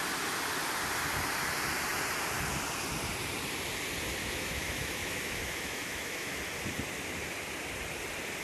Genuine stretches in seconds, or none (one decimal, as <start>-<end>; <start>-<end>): 0.0-4.2; 6.4-8.4